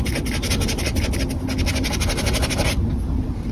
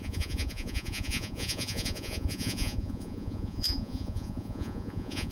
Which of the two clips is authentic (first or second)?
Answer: first